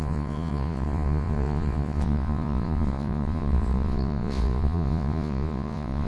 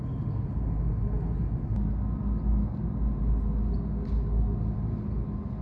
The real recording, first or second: second